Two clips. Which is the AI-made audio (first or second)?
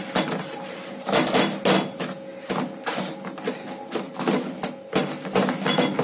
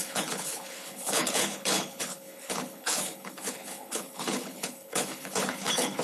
second